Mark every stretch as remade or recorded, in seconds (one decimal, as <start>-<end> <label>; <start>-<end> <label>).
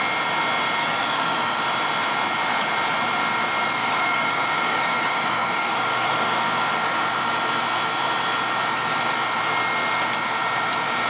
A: 0.0-0.8 recorded; 0.8-1.6 remade; 1.6-3.8 recorded; 3.8-6.4 remade; 6.4-11.1 recorded